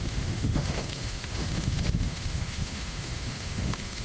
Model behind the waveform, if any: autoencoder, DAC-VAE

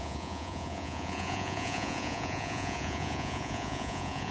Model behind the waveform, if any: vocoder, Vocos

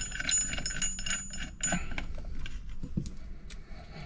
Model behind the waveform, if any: none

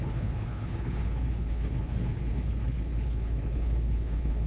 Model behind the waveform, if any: codec, HILCodec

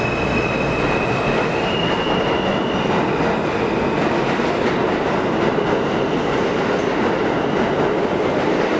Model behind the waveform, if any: none